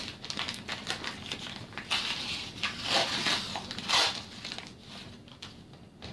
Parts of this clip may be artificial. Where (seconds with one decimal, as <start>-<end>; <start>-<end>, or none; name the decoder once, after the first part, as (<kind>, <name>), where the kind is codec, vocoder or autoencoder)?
none